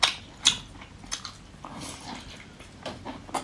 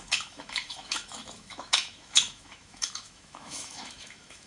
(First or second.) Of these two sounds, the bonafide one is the first